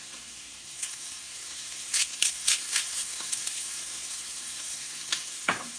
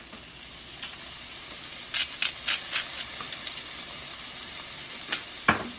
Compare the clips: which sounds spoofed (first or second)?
first